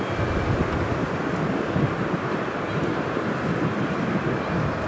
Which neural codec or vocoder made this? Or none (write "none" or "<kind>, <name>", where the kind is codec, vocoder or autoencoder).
none